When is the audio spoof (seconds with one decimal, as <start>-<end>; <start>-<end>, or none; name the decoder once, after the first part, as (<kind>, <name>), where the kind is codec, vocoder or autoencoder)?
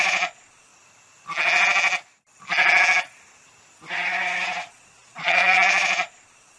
0.0-0.7 (vocoder, Vocos); 4.7-6.6